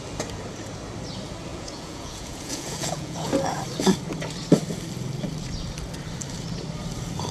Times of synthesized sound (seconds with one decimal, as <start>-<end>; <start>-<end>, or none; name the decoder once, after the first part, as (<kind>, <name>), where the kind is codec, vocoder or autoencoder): 1.5-3.3 (vocoder, Vocos)